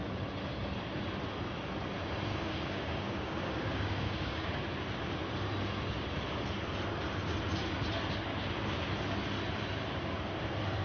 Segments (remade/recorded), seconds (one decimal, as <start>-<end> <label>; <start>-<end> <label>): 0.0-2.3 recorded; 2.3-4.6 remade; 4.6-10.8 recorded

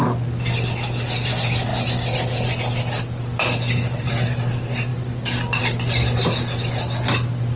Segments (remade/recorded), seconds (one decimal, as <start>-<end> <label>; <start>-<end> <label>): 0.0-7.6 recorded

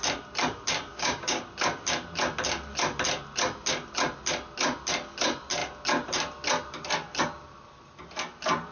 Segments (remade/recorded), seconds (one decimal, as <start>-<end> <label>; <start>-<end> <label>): 0.0-0.9 recorded; 0.9-1.4 remade; 1.4-8.7 recorded

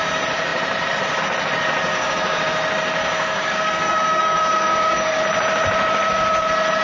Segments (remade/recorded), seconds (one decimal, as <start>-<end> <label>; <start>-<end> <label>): 0.0-1.9 recorded; 1.9-2.4 remade; 2.4-3.0 recorded; 3.0-5.2 remade; 5.2-6.8 recorded

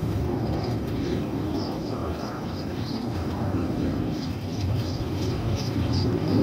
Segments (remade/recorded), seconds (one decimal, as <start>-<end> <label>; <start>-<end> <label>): 0.0-6.4 remade

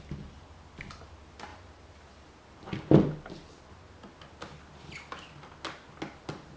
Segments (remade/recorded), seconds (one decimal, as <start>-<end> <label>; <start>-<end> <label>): 0.0-6.6 recorded

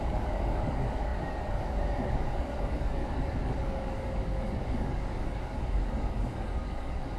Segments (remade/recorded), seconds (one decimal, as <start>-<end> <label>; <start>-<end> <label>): 0.0-7.2 remade

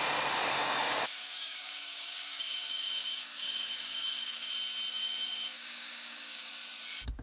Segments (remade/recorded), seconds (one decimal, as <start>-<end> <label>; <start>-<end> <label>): 0.0-0.4 recorded; 0.4-4.5 remade; 4.5-4.9 recorded; 4.9-6.5 remade; 6.5-7.2 recorded